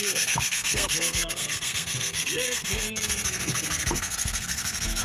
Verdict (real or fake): fake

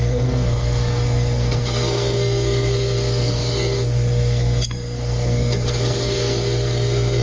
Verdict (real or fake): fake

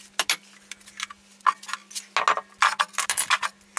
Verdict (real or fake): real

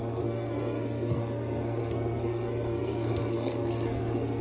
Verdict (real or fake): fake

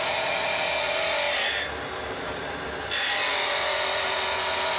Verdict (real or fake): real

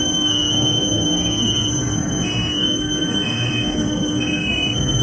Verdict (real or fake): fake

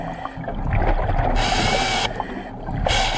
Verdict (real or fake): real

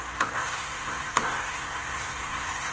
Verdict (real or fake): fake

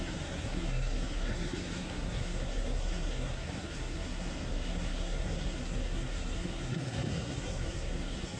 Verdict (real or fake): fake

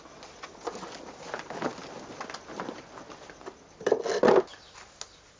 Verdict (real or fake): real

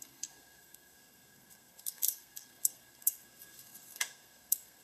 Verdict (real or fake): fake